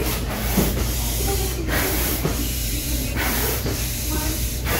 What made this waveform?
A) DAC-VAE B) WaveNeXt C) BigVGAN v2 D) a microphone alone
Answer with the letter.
C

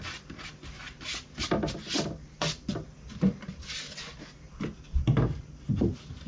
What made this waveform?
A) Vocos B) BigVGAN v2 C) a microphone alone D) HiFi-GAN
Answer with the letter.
C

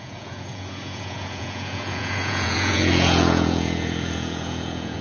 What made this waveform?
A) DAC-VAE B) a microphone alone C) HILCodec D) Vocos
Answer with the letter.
D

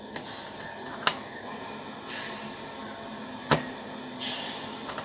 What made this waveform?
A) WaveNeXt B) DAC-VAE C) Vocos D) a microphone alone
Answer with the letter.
D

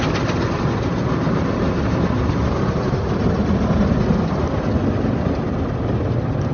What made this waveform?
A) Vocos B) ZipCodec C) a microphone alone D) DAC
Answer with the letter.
C